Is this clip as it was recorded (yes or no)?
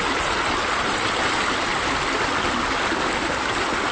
yes